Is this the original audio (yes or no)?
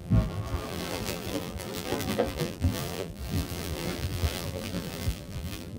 no